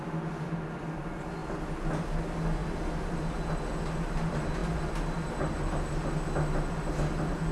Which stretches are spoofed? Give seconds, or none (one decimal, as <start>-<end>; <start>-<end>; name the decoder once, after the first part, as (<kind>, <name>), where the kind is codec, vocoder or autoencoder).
none

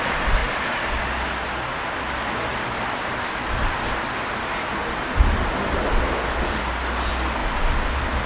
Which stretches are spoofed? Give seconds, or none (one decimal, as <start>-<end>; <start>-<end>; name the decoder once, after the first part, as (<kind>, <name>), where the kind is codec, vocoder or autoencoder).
none